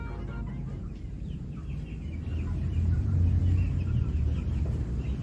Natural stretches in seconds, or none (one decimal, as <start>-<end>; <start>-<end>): 0.0-0.7; 1.7-2.3; 3.4-5.2